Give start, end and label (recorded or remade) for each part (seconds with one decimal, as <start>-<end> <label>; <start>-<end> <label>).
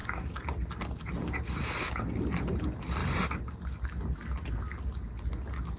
0.0-5.8 recorded